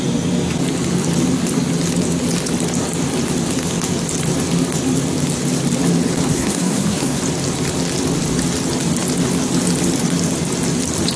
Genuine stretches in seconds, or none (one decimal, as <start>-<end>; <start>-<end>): 0.0-6.3; 7.2-11.2